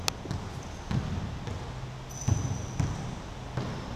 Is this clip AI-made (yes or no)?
no